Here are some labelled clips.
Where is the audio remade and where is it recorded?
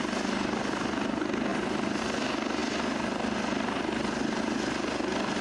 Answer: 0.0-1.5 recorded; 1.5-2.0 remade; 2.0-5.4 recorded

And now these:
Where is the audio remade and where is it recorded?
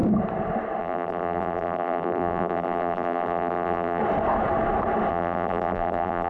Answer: 0.0-0.8 recorded; 0.8-4.0 remade; 4.0-5.1 recorded; 5.1-6.3 remade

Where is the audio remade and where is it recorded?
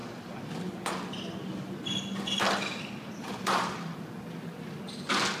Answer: 0.0-3.2 recorded; 3.2-4.8 remade; 4.8-5.4 recorded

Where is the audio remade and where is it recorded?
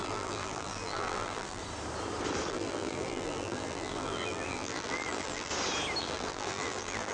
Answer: 0.0-1.6 remade; 1.6-2.5 recorded; 2.5-5.5 remade; 5.5-6.0 recorded; 6.0-7.1 remade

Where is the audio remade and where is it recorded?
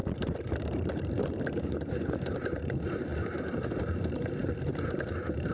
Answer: 0.0-5.5 remade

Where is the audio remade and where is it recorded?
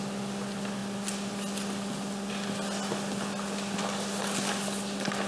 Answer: 0.0-5.3 recorded